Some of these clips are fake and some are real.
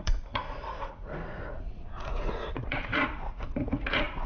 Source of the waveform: fake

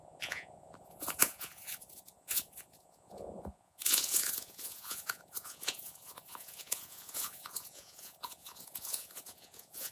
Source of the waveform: fake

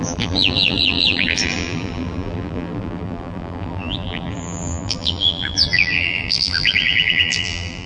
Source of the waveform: fake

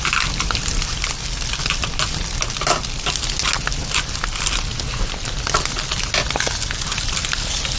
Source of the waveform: real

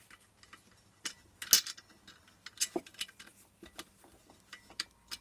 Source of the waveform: real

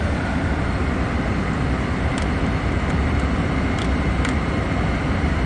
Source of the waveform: real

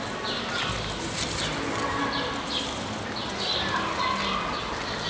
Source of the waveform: real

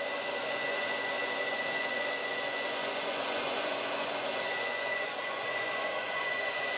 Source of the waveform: fake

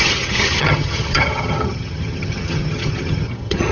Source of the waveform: fake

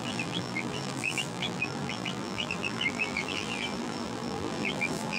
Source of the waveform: fake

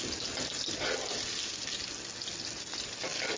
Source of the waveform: real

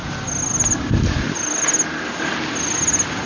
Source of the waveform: real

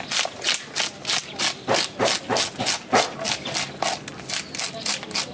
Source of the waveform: real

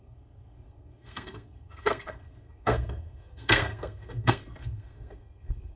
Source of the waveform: fake